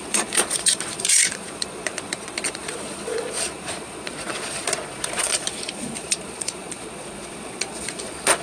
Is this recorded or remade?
remade